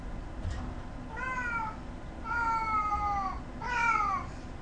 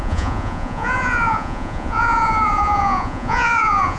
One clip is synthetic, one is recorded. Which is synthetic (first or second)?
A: second